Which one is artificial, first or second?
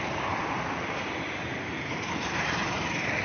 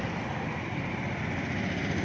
first